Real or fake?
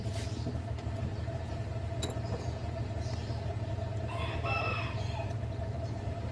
fake